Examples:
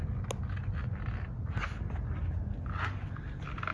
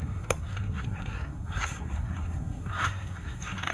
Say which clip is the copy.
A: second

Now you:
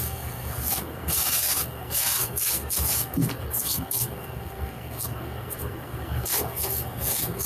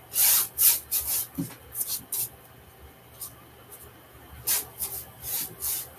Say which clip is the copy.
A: first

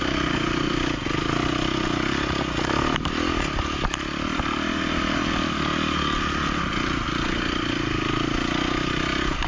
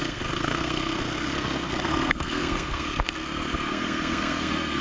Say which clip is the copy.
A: second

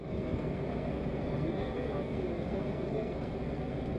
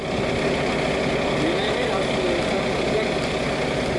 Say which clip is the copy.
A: first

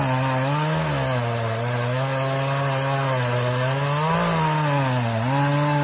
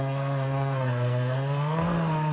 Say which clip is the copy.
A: second